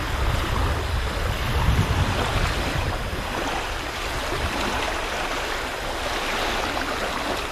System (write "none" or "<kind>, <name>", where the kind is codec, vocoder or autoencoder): none